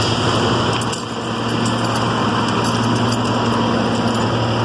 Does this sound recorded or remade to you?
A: recorded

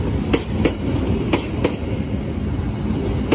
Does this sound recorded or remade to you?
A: recorded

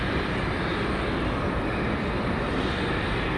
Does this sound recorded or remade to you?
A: recorded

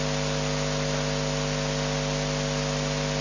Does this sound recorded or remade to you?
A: recorded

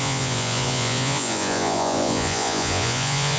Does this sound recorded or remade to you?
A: remade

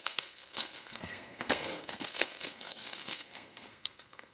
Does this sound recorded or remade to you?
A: remade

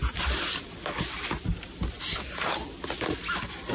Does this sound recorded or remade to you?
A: recorded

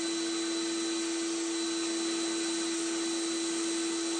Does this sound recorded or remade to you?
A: recorded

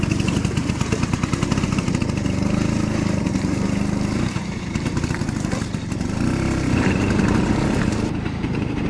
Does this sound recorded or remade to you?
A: remade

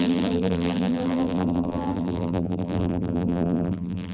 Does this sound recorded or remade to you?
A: remade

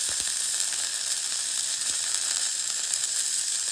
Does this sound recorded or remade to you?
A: remade